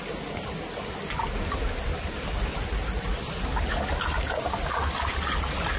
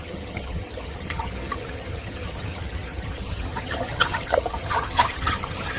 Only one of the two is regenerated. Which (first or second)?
second